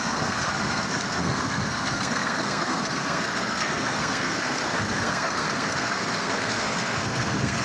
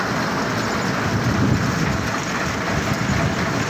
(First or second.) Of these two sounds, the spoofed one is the first